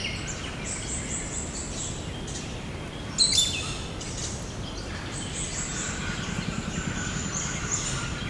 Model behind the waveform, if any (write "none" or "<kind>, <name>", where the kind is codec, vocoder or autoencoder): none